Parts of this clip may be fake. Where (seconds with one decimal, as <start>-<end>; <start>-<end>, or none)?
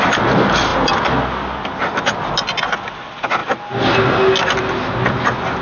none